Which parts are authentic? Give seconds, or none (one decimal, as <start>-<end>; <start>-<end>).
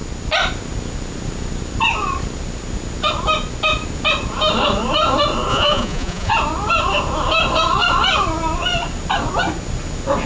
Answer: 0.0-5.5; 6.3-10.3